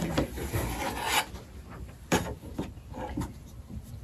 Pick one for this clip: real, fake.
real